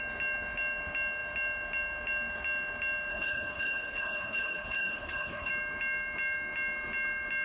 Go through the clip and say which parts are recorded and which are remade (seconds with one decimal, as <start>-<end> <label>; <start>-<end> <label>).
0.0-3.1 recorded; 3.1-5.5 remade; 5.5-7.4 recorded